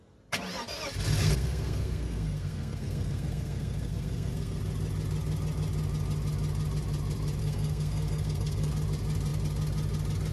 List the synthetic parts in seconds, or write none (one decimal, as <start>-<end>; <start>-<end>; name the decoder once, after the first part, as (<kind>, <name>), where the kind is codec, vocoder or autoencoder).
1.2-4.6 (codec, SNAC); 7.4-8.7